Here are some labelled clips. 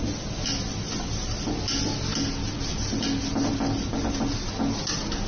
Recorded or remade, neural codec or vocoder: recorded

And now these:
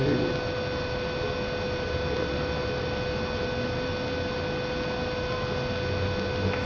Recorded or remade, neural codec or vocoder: recorded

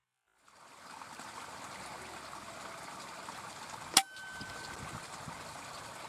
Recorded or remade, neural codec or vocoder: recorded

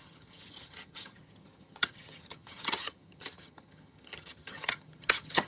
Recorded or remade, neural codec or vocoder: remade, vocoder, HiFi-GAN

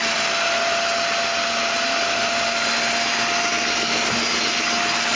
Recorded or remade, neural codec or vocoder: recorded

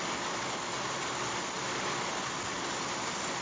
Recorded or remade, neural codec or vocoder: recorded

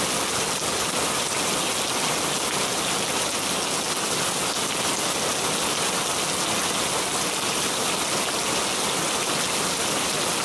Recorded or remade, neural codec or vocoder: recorded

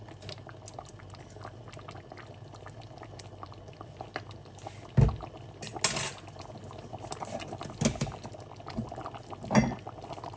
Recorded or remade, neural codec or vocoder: recorded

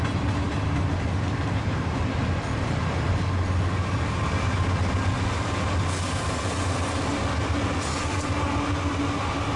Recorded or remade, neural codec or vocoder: recorded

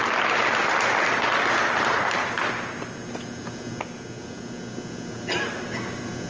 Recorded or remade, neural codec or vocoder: recorded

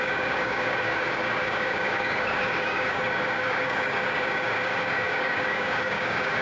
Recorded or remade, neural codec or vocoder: remade, codec, DAC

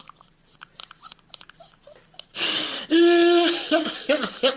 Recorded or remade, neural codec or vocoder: recorded